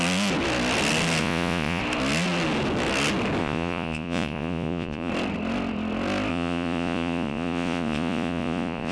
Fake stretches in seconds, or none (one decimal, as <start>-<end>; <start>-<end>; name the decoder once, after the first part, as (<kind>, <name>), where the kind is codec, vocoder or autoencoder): 1.2-1.8 (vocoder, Vocos); 3.4-5.1; 6.3-8.9